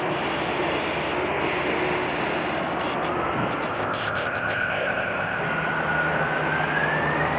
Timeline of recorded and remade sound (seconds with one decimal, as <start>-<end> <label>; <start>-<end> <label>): 0.0-3.7 recorded; 3.7-5.4 remade; 5.4-7.4 recorded